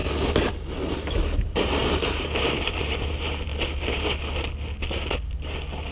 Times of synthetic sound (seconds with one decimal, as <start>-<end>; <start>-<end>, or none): 0.9-3.5